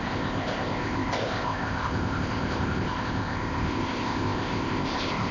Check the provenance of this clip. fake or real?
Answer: fake